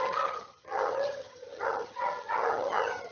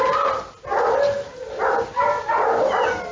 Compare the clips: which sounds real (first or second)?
second